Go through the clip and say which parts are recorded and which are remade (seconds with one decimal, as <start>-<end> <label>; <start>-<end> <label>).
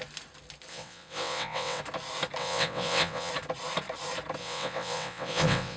0.0-0.7 recorded; 0.7-1.8 remade; 1.8-2.4 recorded; 2.4-3.3 remade; 3.3-4.4 recorded; 4.4-5.8 remade